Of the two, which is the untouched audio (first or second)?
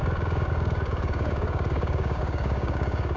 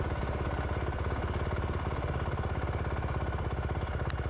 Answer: second